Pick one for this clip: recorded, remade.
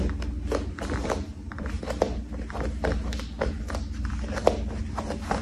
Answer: recorded